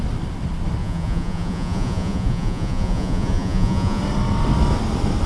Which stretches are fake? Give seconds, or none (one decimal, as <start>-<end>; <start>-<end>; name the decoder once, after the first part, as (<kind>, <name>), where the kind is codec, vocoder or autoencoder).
0.8-4.0 (vocoder, Vocos)